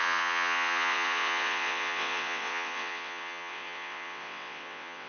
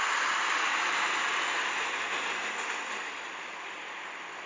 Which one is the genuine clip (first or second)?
second